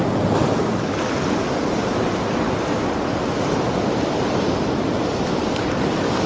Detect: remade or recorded recorded